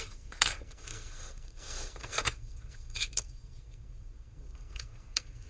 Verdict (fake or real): fake